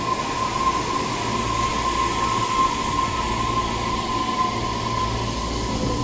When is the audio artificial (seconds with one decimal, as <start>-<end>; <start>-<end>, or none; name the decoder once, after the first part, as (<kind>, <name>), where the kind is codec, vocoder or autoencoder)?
none